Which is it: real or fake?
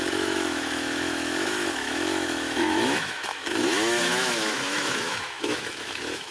fake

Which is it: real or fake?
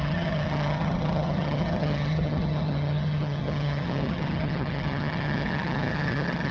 fake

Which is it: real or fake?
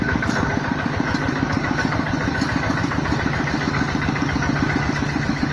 fake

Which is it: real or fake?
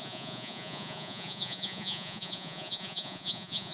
fake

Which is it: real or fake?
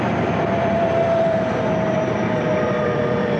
fake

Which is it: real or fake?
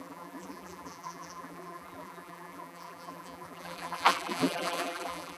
fake